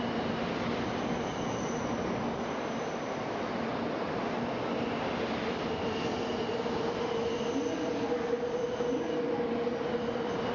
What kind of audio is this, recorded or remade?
recorded